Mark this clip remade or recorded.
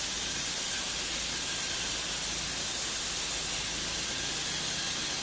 recorded